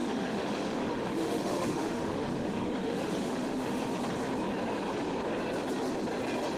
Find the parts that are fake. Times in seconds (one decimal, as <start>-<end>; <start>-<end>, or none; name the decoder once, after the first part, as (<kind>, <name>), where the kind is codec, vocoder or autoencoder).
0.0-4.0 (autoencoder, DAC-VAE)